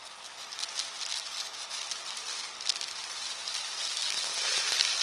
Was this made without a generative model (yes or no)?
yes